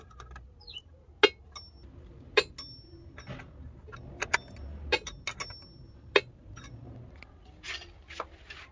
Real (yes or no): yes